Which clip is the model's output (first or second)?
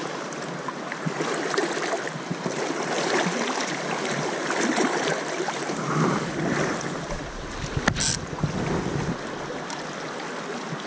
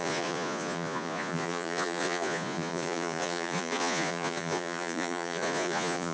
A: second